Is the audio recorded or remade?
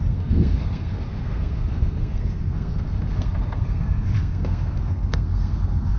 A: remade